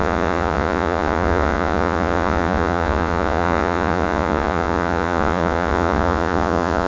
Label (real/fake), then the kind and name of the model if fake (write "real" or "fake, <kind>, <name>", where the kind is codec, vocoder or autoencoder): fake, vocoder, Vocos